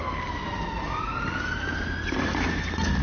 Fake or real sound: real